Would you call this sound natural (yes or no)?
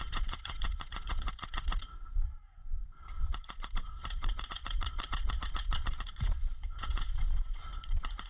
no